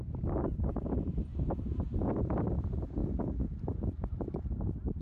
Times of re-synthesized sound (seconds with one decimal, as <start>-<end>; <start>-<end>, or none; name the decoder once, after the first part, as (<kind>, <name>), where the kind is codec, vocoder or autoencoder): 0.0-3.0 (vocoder, BigVGAN v2); 3.6-5.0